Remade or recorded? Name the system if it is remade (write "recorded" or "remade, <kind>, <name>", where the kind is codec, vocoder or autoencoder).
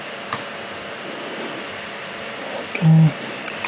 recorded